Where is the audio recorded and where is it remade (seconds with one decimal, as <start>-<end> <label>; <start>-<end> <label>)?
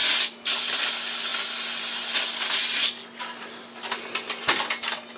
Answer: 0.0-0.8 remade; 0.8-5.2 recorded